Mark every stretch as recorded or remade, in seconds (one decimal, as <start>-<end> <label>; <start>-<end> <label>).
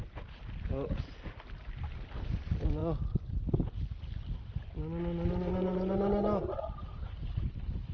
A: 0.0-7.9 recorded